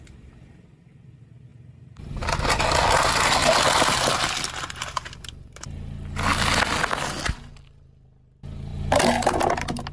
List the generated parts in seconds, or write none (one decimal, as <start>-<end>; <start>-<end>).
none